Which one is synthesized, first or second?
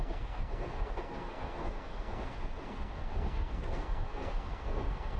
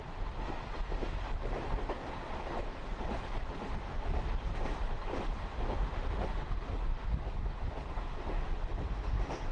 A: first